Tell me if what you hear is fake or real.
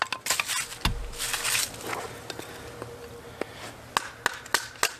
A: real